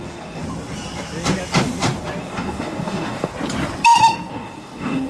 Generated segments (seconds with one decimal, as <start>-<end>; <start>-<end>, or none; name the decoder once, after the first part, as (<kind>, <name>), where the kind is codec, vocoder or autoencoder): 0.0-0.4 (codec, DAC); 2.2-3.3; 4.3-5.1